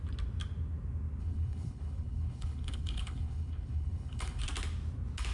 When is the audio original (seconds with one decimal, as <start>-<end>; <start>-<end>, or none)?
0.0-1.2; 4.4-5.3